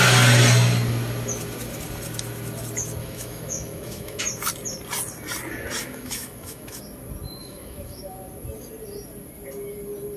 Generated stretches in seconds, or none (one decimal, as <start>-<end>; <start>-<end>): 3.0-4.2; 5.8-6.8; 7.4-8.0